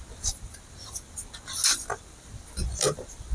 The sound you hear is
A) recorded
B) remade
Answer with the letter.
A